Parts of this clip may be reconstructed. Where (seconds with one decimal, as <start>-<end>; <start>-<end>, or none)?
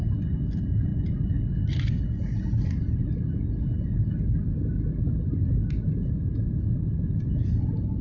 none